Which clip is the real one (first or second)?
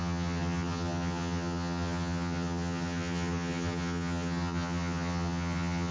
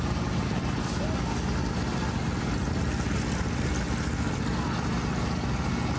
second